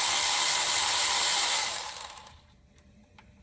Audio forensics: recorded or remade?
remade